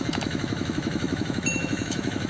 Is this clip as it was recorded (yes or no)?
no